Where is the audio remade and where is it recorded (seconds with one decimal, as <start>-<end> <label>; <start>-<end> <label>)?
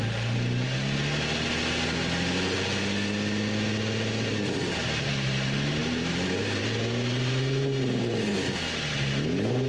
0.0-5.8 recorded; 5.8-7.6 remade; 7.6-9.7 recorded